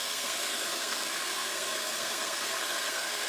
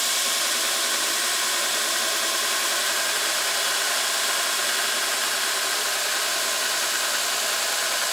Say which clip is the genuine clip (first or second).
second